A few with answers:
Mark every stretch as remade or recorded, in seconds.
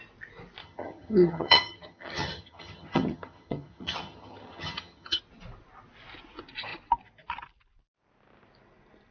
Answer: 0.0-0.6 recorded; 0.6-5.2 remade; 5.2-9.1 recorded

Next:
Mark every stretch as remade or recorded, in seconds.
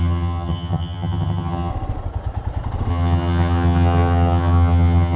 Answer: 0.0-1.7 remade; 1.7-2.9 recorded; 2.9-5.2 remade